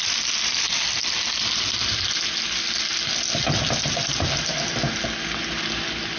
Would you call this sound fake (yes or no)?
no